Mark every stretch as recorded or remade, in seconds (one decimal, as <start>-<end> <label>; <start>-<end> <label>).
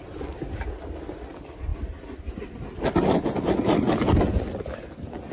0.0-5.3 recorded